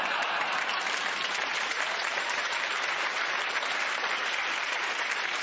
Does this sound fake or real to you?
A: fake